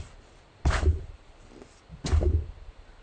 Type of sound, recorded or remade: recorded